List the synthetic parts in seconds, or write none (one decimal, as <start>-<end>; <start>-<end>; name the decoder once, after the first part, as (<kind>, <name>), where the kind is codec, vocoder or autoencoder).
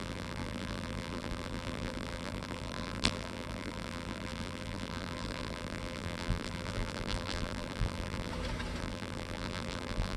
0.0-8.3 (vocoder, BigVGAN v2); 8.8-10.2